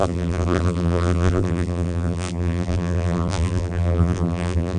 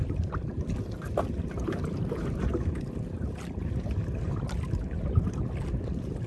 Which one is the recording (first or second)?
second